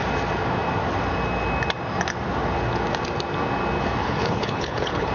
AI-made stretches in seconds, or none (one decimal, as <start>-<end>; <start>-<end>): 4.0-5.1